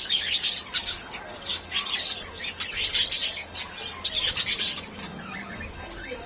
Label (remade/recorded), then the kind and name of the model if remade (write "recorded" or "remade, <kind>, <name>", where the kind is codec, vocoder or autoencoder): recorded